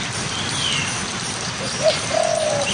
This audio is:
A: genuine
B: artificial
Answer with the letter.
A